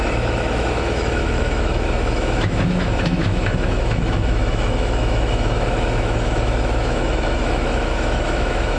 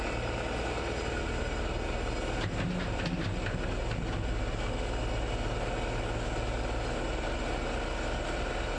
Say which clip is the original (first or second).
second